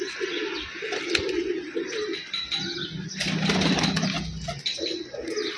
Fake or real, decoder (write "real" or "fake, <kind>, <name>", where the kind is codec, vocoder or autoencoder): real